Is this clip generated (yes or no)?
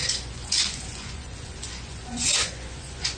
yes